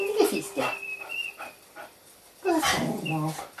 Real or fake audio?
real